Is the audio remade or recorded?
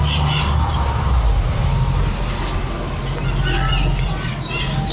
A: recorded